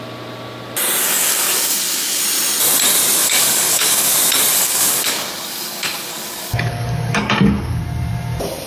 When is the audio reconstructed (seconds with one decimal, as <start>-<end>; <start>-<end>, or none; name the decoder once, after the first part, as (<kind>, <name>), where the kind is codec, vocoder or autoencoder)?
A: 1.0-2.2 (codec, DAC); 3.2-4.1; 4.5-7.8